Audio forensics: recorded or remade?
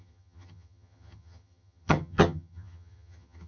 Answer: remade